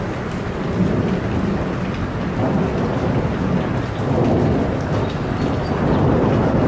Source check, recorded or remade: recorded